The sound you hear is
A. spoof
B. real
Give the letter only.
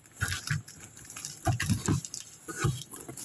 B